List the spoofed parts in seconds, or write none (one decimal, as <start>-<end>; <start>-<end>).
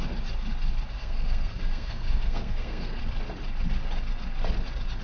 1.0-3.0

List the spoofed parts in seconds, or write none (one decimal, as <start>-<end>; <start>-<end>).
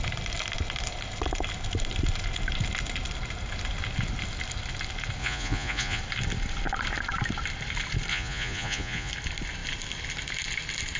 5.2-6.0; 8.1-9.1